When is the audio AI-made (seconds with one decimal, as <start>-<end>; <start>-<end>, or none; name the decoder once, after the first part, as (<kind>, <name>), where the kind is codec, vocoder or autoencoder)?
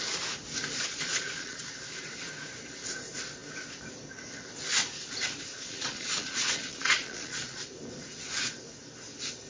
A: 0.8-1.6 (vocoder, Vocos); 5.5-7.6